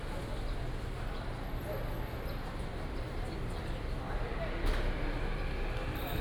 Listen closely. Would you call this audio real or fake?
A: real